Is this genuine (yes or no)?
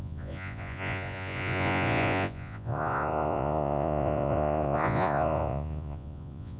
no